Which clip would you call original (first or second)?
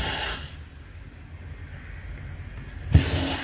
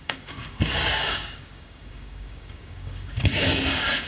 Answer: first